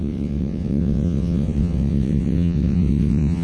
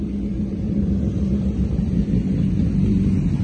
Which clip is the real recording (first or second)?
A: second